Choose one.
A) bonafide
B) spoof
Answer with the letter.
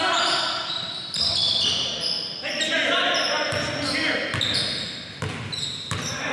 A